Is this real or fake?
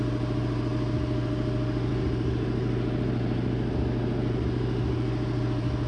real